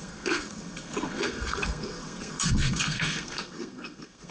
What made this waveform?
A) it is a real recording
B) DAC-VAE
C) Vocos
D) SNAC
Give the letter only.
D